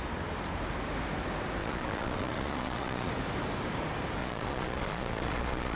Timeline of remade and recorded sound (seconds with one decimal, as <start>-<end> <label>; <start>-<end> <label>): 0.0-1.6 recorded; 1.6-3.1 remade; 3.1-4.2 recorded; 4.2-5.8 remade